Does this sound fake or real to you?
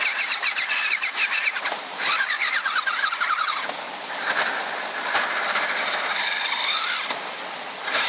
fake